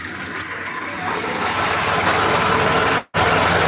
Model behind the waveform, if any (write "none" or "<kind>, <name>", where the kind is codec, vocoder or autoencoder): none